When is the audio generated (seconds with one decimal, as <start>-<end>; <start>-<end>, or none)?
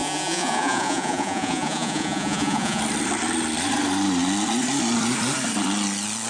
0.0-2.8